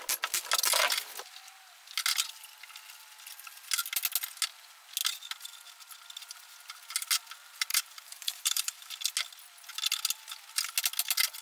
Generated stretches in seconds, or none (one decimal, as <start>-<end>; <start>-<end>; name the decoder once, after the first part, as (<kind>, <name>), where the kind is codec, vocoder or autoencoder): 7.7-8.9 (vocoder, BigVGAN v2)